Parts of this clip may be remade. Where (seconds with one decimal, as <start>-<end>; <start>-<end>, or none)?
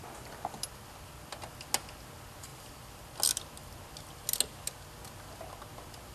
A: none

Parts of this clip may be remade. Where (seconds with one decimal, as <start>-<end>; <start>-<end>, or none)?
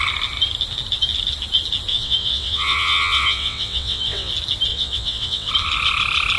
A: 1.9-4.3; 4.7-5.5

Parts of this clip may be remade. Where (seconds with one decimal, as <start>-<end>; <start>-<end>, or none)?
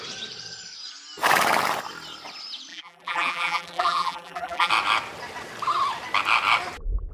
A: 2.7-4.7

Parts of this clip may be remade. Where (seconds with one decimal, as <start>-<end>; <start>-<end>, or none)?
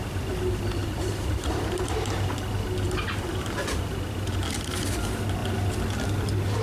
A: 0.8-2.5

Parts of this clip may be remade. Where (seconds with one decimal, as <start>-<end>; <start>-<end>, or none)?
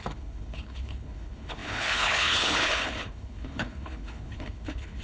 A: 0.0-5.0